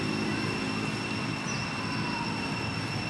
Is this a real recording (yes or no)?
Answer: yes